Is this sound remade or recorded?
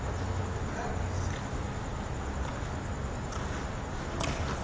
recorded